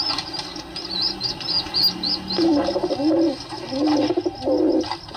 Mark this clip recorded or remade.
recorded